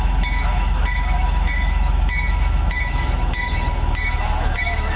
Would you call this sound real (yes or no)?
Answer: no